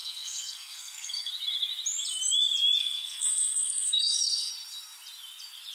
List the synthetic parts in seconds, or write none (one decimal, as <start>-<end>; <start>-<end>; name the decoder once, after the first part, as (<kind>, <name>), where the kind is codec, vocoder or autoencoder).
0.0-1.3 (codec, SNAC); 2.8-4.5